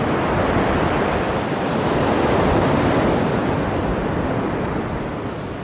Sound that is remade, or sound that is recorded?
recorded